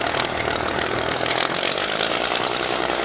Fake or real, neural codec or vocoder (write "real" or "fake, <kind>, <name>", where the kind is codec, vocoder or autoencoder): fake, codec, DAC